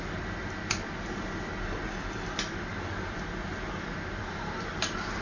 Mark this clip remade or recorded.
remade